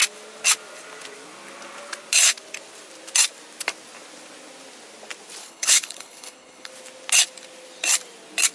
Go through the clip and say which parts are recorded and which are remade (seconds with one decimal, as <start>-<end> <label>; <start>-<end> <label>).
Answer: 0.0-5.4 recorded; 5.4-6.7 remade; 6.7-8.5 recorded